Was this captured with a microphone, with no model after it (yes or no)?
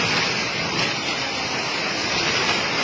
yes